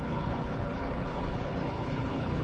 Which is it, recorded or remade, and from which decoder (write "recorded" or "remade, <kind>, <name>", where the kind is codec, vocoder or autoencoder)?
remade, codec, HILCodec